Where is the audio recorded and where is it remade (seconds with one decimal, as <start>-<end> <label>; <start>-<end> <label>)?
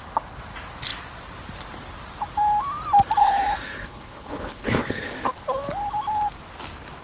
0.0-3.2 recorded; 3.2-5.1 remade; 5.1-7.0 recorded